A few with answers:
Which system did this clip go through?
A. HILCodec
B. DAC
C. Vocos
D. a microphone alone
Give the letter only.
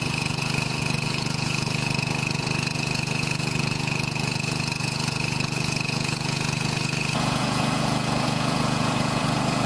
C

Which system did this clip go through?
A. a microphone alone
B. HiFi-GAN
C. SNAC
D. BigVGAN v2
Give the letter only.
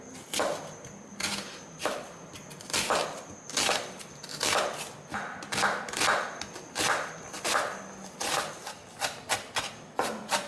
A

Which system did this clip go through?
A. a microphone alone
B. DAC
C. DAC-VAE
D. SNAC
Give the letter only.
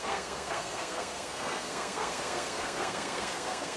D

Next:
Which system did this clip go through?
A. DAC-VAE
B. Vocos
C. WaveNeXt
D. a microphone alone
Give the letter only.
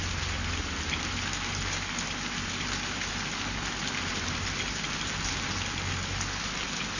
D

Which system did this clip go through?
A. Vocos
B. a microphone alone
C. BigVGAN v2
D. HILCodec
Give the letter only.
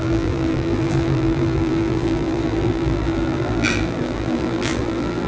C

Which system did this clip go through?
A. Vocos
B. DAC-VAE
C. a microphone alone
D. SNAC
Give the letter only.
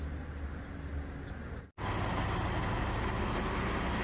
C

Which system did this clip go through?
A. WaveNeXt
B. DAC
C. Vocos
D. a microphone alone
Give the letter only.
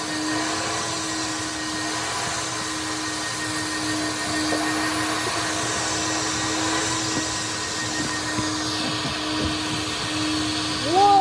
D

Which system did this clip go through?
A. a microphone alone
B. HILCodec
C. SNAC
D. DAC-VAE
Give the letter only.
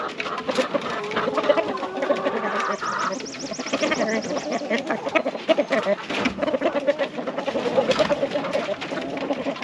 A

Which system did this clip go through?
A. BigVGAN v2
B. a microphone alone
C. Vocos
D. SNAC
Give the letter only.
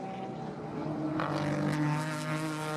B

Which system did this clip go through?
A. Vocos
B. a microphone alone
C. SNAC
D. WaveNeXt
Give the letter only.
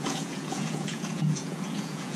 A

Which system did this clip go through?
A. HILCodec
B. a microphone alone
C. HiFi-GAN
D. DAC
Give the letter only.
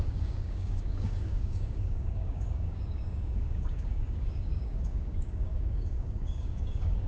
D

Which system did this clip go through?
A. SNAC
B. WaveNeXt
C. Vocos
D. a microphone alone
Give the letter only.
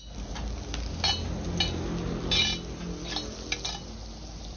D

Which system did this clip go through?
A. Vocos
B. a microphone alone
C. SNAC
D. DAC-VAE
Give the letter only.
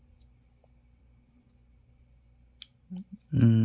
B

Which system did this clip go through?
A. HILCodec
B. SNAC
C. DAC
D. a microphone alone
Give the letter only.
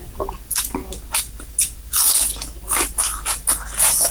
C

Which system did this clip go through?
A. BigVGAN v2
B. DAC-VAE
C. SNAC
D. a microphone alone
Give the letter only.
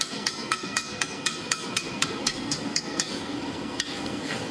C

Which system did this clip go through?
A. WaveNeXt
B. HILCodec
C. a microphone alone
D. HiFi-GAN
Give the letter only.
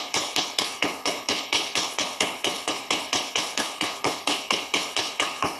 B